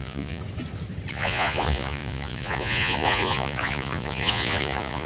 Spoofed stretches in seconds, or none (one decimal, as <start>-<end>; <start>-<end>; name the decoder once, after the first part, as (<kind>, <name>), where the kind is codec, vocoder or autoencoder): 0.0-0.4 (vocoder, Vocos); 1.1-5.1